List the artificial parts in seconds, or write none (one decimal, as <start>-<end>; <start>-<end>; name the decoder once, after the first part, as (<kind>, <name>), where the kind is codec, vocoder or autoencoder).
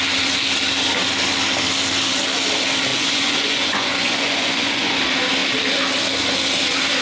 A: 2.9-5.0 (vocoder, Vocos)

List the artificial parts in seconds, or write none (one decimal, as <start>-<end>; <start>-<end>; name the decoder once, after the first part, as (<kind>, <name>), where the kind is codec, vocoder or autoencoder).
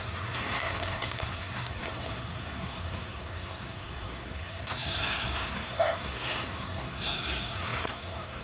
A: 0.0-8.4 (codec, SNAC)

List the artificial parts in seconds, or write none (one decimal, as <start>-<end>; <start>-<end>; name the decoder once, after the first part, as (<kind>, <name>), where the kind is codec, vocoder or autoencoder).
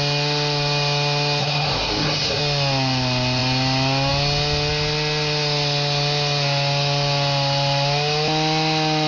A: 1.4-2.4 (codec, SNAC)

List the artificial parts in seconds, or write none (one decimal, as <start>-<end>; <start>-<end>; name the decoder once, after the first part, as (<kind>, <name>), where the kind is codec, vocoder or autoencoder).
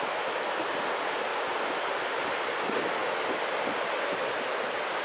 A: none